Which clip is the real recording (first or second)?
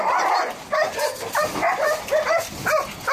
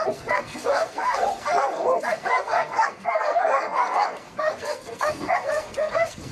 first